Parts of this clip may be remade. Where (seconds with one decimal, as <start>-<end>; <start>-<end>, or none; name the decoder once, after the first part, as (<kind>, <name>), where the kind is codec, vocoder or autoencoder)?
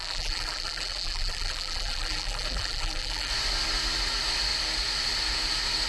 0.0-3.3 (vocoder, BigVGAN v2)